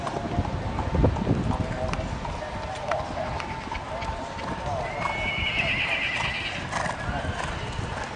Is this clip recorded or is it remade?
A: recorded